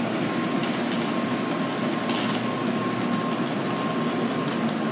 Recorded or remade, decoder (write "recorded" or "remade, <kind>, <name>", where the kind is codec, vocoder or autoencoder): recorded